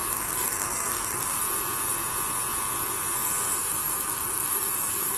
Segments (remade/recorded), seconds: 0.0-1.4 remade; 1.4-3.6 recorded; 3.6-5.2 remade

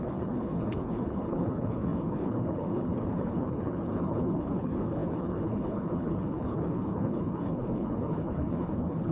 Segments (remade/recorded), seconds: 0.0-9.1 remade